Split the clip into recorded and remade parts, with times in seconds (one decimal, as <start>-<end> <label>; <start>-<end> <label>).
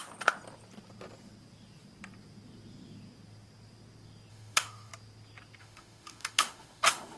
0.0-4.3 recorded; 4.3-4.9 remade; 4.9-5.6 recorded; 5.6-7.2 remade